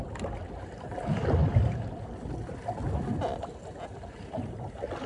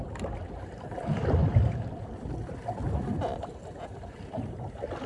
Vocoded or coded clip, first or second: second